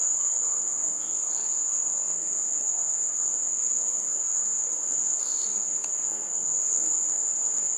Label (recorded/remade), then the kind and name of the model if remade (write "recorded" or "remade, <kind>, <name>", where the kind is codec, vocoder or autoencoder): remade, codec, SNAC